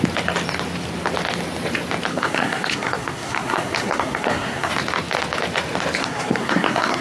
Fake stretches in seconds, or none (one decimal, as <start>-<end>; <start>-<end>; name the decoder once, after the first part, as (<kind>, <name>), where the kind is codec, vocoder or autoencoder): 2.1-4.7 (codec, SNAC); 6.0-7.0